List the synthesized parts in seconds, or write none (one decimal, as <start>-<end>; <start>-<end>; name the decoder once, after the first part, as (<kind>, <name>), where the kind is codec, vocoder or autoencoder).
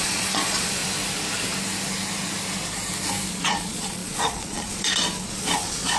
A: 0.0-0.8 (vocoder, Vocos); 3.3-6.0